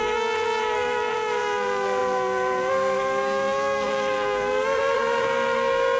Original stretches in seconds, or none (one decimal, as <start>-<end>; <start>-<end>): none